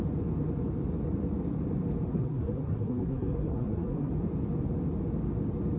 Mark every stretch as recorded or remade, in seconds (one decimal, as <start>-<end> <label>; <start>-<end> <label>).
0.0-2.1 recorded; 2.1-4.1 remade; 4.1-5.8 recorded